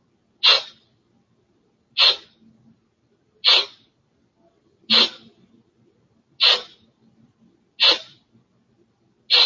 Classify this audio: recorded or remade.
recorded